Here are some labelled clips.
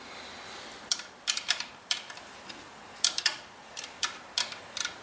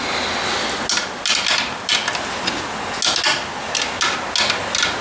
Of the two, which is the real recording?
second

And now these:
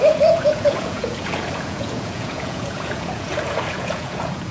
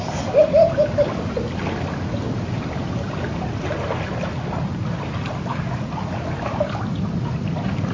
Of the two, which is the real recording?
second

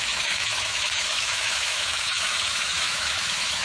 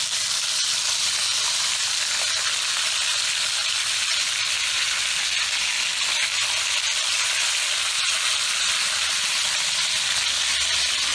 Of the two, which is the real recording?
second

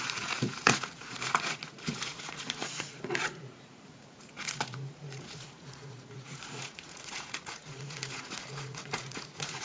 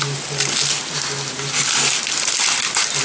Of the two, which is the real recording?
second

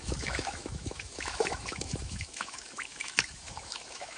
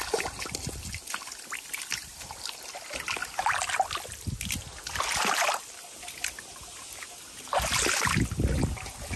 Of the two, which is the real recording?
second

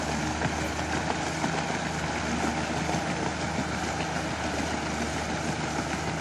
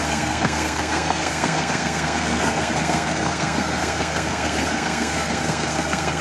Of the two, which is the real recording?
first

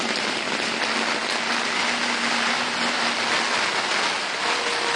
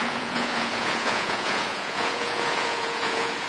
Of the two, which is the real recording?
first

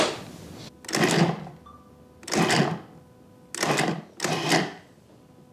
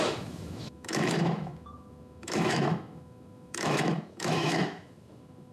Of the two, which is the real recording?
first